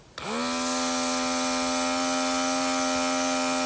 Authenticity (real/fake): real